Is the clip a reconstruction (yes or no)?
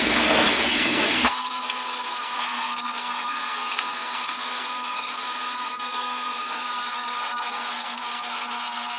yes